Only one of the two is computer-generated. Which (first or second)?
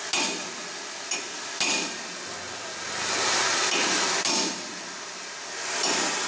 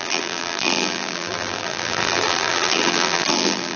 second